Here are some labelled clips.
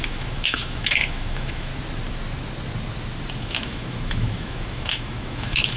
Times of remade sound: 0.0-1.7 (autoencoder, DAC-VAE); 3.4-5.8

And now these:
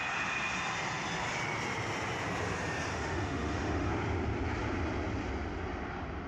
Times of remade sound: 2.9-3.9 (autoencoder, DAC-VAE)

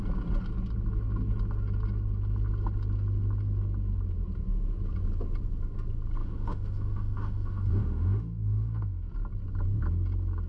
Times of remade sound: 6.2-9.1 (autoencoder, DAC-VAE)

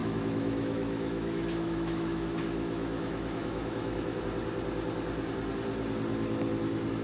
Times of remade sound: 0.0-4.2 (autoencoder, DAC-VAE)

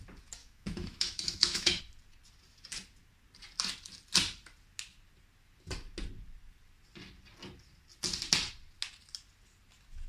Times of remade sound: 0.4-1.8 (autoencoder, DAC-VAE)